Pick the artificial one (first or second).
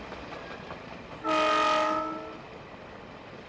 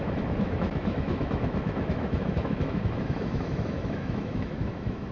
second